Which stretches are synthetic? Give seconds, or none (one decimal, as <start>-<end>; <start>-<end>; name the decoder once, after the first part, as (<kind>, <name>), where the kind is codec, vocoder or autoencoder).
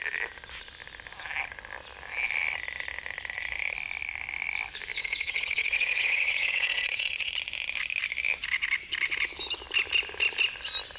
4.9-7.3 (vocoder, WaveNeXt)